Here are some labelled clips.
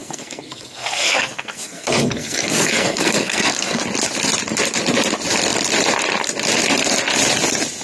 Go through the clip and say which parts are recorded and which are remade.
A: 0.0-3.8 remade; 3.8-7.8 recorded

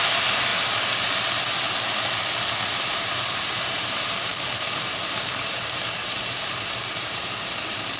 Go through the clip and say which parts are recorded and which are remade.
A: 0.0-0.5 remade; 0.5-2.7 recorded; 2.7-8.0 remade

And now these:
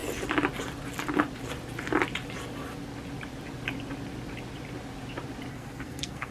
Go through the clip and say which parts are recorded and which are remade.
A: 0.0-5.5 recorded; 5.5-6.3 remade

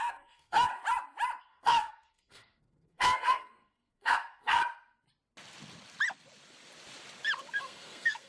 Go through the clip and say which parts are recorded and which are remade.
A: 0.0-0.7 remade; 0.7-1.4 recorded; 1.4-4.6 remade; 4.6-7.6 recorded; 7.6-8.3 remade

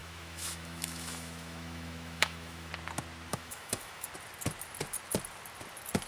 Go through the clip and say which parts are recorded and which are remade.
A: 0.0-2.7 remade; 2.7-3.3 recorded; 3.3-4.1 remade; 4.1-6.1 recorded

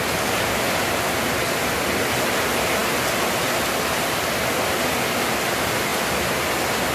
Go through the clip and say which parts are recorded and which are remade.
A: 0.0-6.9 recorded

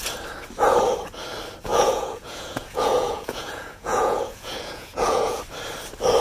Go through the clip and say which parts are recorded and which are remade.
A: 0.0-1.7 recorded; 1.7-5.4 remade; 5.4-6.2 recorded